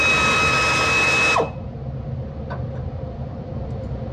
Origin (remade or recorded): recorded